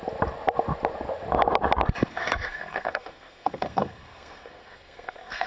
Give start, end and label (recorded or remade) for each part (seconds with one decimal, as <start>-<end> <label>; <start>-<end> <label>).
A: 0.0-2.1 recorded; 2.1-5.5 remade